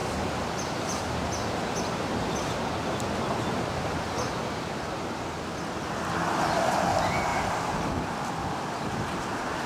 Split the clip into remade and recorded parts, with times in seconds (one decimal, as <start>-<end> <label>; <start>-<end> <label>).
0.0-3.5 remade; 3.5-7.3 recorded; 7.3-8.7 remade; 8.7-9.7 recorded